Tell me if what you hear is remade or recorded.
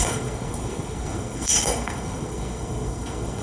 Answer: remade